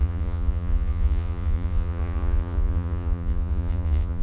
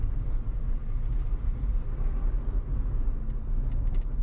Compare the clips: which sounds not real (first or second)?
first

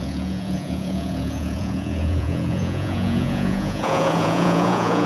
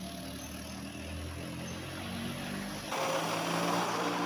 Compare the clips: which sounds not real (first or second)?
first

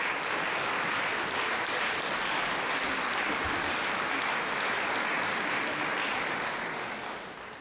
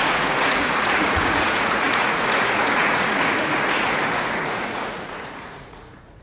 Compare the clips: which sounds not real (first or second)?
second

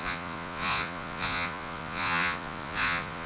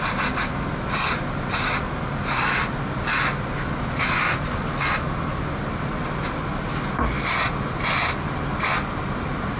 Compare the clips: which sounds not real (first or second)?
first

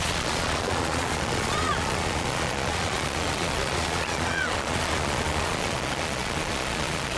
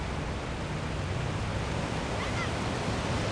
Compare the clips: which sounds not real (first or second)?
first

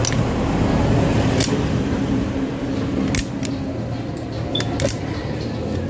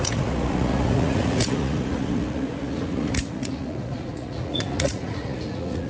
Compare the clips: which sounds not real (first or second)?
second